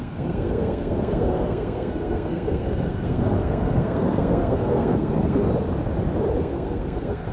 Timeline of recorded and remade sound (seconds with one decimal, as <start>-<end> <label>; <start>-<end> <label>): 0.0-5.4 remade; 5.4-6.4 recorded; 6.4-7.3 remade